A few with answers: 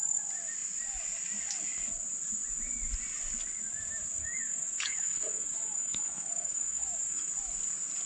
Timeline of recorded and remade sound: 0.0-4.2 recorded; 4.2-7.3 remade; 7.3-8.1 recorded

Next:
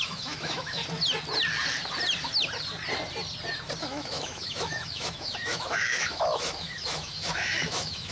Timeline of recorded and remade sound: 0.0-0.8 remade; 0.8-3.8 recorded; 3.8-8.1 remade